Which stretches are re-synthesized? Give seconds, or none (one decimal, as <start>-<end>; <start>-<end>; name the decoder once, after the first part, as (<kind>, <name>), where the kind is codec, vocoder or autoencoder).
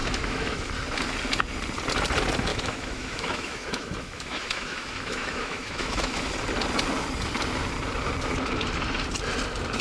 0.0-0.7 (autoencoder, DAC-VAE); 2.5-6.3